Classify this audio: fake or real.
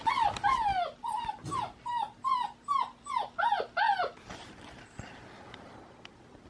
real